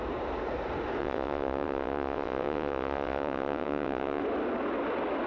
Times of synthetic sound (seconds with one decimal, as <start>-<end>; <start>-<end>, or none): 1.0-4.2